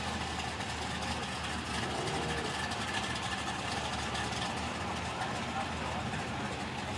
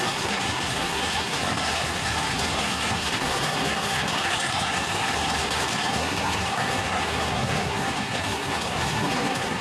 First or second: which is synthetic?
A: second